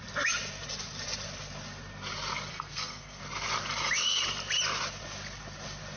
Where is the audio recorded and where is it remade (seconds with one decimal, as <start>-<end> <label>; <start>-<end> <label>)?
0.0-2.5 recorded; 2.5-3.2 remade; 3.2-6.0 recorded